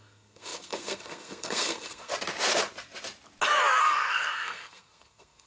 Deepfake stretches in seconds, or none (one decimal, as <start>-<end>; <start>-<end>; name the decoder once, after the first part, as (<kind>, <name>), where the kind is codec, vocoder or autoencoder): 0.0-2.1 (codec, SNAC); 3.8-5.5